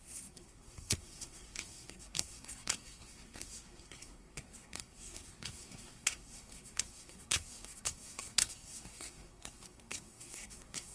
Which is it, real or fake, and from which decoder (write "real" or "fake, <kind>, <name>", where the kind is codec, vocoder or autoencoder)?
fake, codec, SNAC